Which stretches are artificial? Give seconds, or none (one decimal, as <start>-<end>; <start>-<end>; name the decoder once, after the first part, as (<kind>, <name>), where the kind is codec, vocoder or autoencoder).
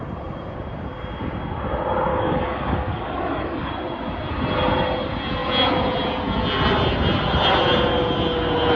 2.1-3.7 (codec, DAC)